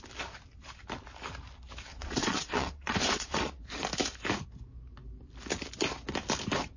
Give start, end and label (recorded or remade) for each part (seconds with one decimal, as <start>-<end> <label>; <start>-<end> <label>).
0.0-1.9 recorded; 1.9-3.6 remade; 3.6-6.8 recorded